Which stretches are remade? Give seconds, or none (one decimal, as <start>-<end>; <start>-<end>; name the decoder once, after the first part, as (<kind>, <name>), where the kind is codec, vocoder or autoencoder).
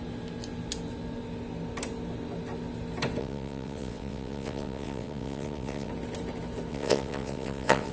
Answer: 3.2-5.9 (vocoder, WaveNeXt); 6.7-7.9